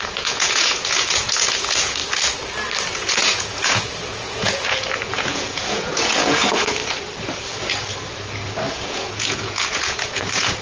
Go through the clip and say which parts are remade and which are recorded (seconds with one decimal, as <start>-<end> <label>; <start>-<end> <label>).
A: 0.0-2.0 remade; 2.0-2.9 recorded; 2.9-6.8 remade; 6.8-8.7 recorded; 8.7-10.6 remade